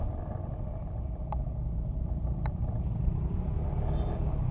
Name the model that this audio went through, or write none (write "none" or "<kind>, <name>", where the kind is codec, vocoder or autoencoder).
none